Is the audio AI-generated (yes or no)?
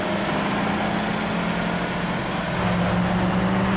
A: no